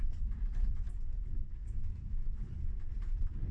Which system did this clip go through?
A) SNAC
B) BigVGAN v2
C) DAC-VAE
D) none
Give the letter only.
D